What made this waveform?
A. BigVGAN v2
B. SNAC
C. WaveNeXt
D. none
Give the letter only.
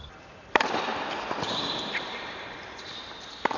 A